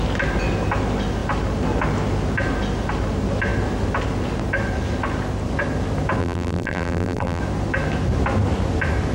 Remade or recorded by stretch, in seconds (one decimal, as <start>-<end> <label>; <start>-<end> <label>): 0.0-6.2 recorded; 6.2-7.4 remade; 7.4-9.1 recorded